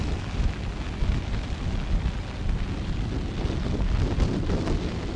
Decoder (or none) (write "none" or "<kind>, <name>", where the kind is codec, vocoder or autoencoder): none